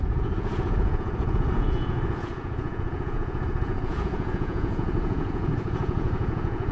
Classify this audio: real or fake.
fake